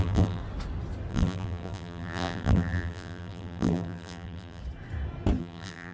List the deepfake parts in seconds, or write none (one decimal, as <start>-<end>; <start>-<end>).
0.0-0.4; 1.1-4.6; 5.4-5.9

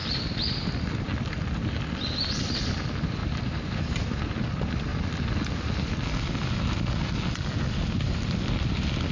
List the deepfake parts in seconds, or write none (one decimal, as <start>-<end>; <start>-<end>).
3.2-4.2

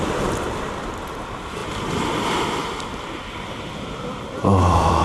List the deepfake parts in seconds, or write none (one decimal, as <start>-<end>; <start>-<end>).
0.0-1.6; 3.1-5.0

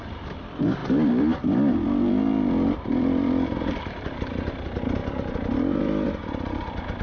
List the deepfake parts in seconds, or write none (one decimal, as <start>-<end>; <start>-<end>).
0.8-3.7

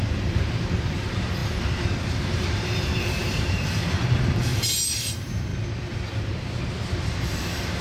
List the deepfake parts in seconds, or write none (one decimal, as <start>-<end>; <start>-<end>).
0.0-4.5; 5.0-5.5; 6.8-7.8